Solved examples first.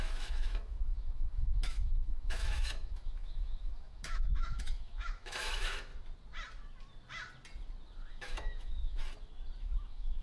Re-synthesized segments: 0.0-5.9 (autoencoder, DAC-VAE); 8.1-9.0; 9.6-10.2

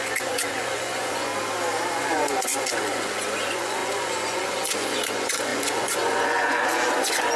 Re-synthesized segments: 0.0-1.3 (vocoder, Vocos); 1.9-7.4

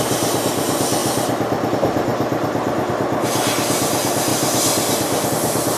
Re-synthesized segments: 4.3-5.3 (vocoder, BigVGAN v2)

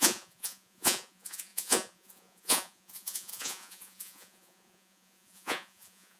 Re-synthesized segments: 0.0-6.2 (vocoder, Vocos)

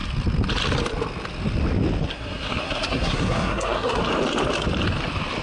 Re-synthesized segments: 2.1-4.0 (codec, SNAC)

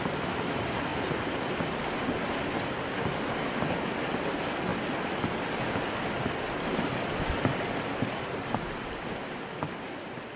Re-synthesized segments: none

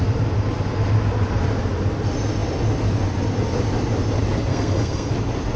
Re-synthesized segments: 4.5-5.1 (codec, SNAC)